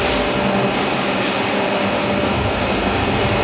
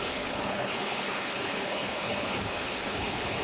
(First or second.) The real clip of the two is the first